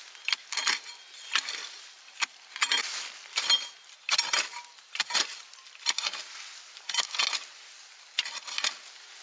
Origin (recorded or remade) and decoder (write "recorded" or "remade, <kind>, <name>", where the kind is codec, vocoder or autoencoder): recorded